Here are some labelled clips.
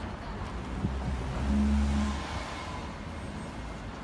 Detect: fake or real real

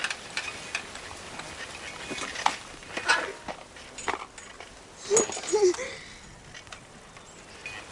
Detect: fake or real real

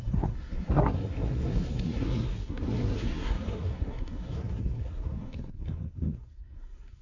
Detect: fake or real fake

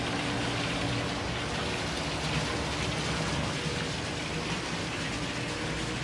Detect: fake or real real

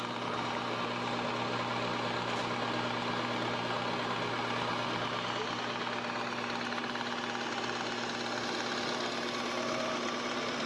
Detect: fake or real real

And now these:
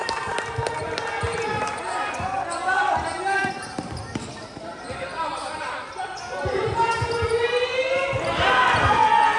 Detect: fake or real real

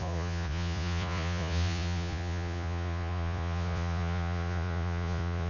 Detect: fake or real fake